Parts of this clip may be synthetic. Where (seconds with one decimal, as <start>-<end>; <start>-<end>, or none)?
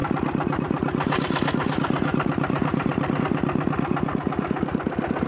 0.0-3.2